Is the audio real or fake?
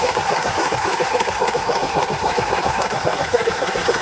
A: fake